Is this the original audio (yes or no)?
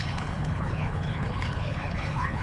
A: no